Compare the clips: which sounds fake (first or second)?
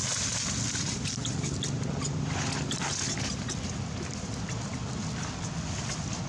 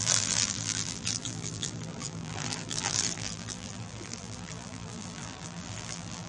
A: second